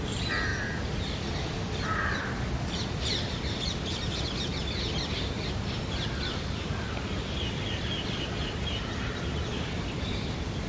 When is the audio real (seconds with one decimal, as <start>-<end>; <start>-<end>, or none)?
0.0-10.7